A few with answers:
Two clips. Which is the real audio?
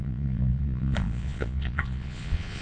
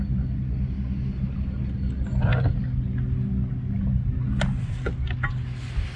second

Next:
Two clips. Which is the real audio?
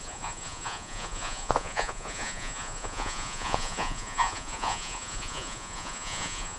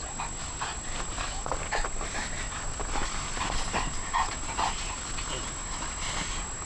second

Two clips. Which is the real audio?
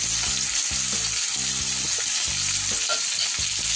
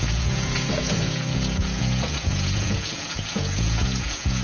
first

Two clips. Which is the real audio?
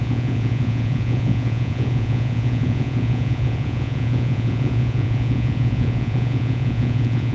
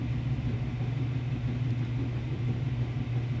second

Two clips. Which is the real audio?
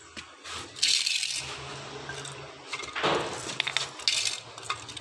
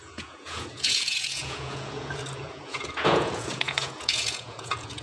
first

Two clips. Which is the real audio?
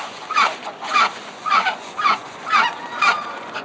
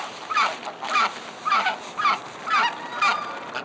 second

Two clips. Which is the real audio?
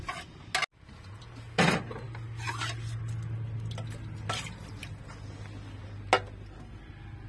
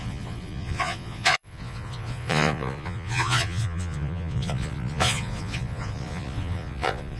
first